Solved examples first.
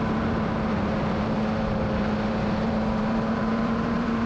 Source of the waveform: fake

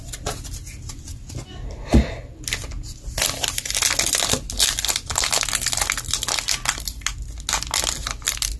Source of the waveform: real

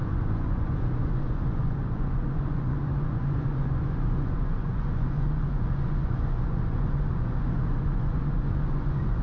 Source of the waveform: fake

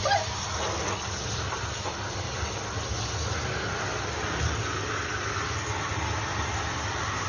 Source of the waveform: real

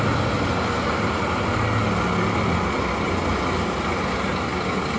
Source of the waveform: real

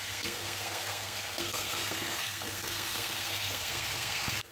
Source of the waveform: fake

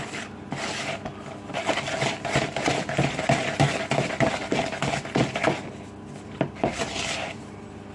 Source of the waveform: real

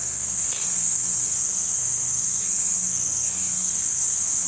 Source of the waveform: fake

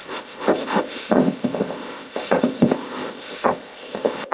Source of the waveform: fake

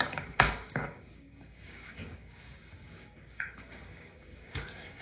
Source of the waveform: fake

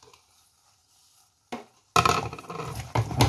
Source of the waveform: real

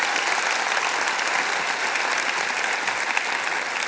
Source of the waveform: real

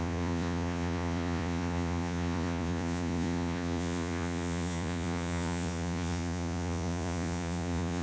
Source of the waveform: fake